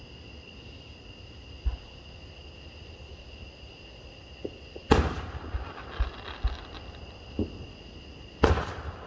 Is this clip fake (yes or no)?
no